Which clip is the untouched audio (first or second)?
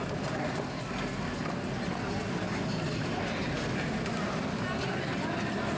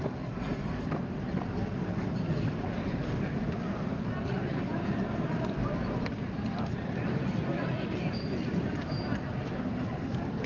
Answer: first